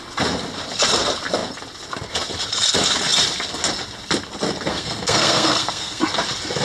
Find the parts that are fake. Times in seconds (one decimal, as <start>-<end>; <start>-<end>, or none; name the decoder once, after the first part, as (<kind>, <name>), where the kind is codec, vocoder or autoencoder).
4.7-6.0 (codec, SNAC)